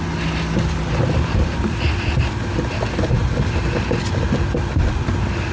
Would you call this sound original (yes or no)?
yes